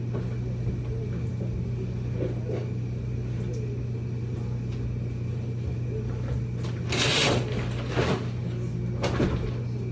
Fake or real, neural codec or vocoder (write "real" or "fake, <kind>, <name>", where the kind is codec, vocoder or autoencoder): real